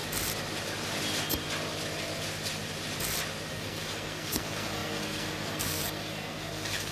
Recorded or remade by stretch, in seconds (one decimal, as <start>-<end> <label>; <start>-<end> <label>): 0.0-3.5 recorded; 3.5-6.9 remade